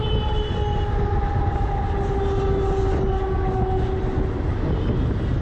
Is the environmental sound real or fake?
real